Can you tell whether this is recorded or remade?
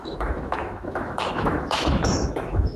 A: remade